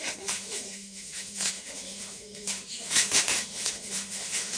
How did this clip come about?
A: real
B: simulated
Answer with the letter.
B